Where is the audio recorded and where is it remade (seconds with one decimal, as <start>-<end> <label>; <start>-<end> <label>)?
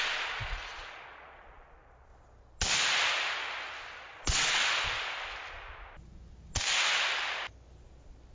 0.0-2.1 remade; 2.1-3.8 recorded; 3.8-4.6 remade; 4.6-8.3 recorded